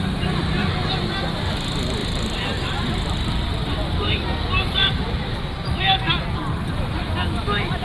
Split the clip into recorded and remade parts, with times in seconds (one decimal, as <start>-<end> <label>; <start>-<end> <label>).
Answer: 0.0-2.0 recorded; 2.0-5.4 remade; 5.4-7.8 recorded